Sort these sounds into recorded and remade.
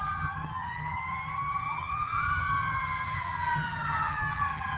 remade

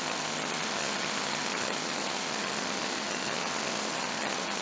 remade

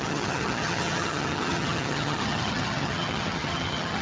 remade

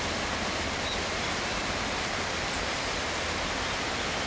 recorded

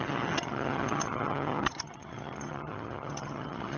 remade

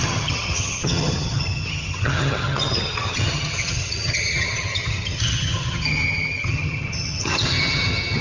remade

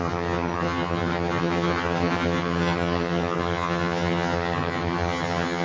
remade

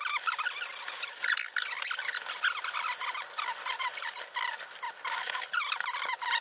recorded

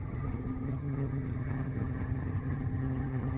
remade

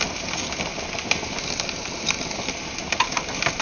recorded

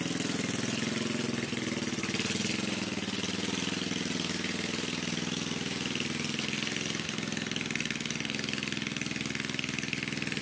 recorded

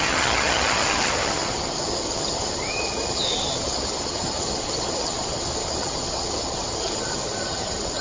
remade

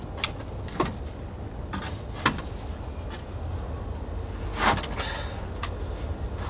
recorded